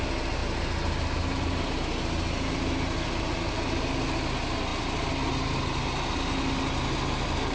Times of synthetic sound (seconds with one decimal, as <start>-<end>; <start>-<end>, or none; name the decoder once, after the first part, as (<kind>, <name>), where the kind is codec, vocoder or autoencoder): none